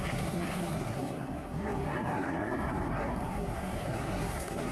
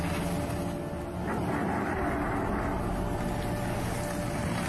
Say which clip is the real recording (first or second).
second